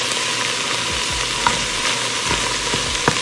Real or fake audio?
real